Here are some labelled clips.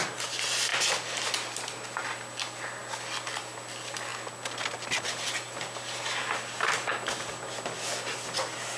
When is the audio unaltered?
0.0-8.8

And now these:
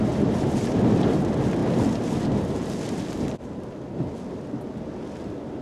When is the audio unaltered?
0.0-5.6

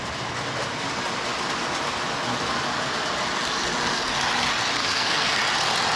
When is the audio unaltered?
0.0-4.8; 5.4-6.0

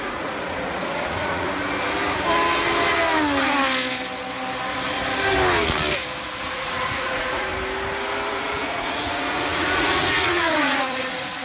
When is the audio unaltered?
1.5-6.5; 7.5-8.3

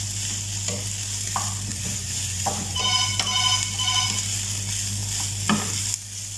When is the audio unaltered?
0.0-1.7; 2.8-6.4

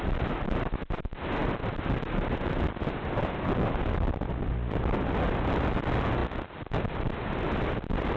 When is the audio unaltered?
0.0-8.2

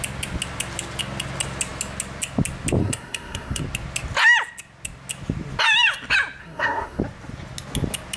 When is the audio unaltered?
0.0-2.8; 3.6-6.4; 7.0-8.2